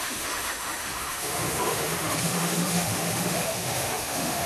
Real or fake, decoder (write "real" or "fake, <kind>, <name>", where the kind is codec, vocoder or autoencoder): fake, autoencoder, DAC-VAE